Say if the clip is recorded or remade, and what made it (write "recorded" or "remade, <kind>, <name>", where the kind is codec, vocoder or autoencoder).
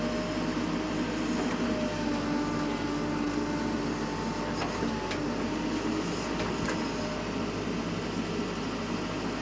recorded